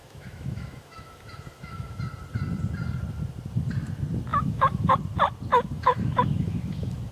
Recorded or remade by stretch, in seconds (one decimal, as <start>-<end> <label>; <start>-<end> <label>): 0.0-2.0 remade; 2.0-4.3 recorded; 4.3-4.9 remade; 4.9-5.5 recorded; 5.5-7.1 remade